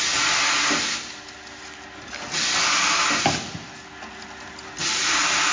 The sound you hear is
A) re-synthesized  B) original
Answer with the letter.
B